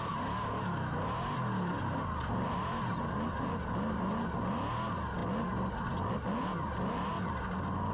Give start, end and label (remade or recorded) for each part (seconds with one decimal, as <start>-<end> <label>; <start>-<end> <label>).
0.0-7.9 recorded